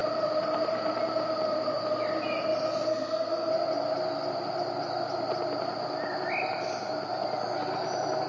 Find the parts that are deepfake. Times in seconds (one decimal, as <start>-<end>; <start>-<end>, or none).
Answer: 2.9-3.5

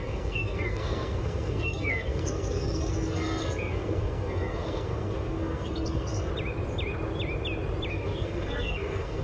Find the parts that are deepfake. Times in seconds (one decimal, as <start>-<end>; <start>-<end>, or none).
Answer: 0.0-6.3; 7.9-9.2

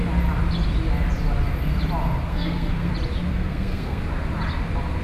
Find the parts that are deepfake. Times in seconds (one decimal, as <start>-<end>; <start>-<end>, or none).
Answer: 2.3-2.9; 3.3-4.0

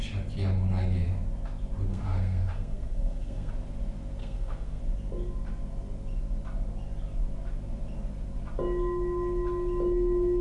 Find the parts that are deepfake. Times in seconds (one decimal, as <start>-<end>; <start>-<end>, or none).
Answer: 1.9-3.5; 4.2-4.8

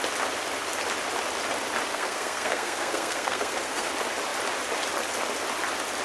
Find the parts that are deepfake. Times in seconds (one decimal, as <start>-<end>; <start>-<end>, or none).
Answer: 1.9-3.9

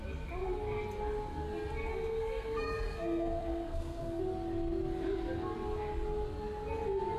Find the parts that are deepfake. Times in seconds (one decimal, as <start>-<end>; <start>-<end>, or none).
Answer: 1.9-4.2

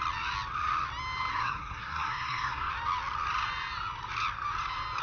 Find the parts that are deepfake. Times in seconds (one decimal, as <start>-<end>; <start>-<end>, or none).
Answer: 1.3-2.7